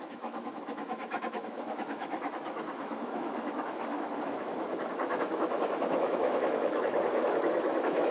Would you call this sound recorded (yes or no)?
no